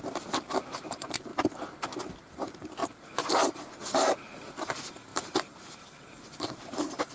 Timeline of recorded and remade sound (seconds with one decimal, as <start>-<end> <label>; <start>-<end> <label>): 0.0-1.3 remade; 1.3-2.0 recorded; 2.0-7.1 remade